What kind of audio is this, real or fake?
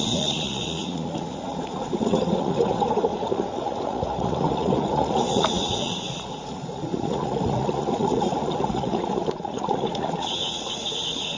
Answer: fake